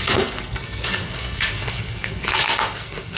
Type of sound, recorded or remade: remade